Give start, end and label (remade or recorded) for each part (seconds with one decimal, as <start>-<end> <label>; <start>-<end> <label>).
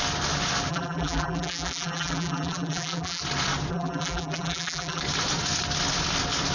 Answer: 0.0-0.7 recorded; 0.7-3.2 remade; 3.2-3.7 recorded; 3.7-5.0 remade; 5.0-6.5 recorded